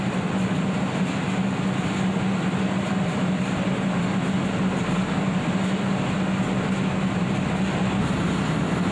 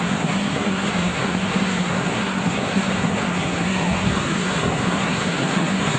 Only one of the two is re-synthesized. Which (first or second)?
second